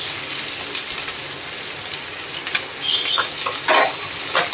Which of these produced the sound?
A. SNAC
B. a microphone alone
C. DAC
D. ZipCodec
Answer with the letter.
B